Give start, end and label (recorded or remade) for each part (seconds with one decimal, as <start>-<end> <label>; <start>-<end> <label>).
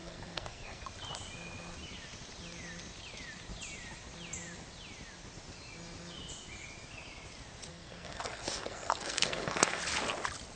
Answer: 0.0-0.9 remade; 0.9-7.7 recorded; 7.7-9.8 remade; 9.8-10.6 recorded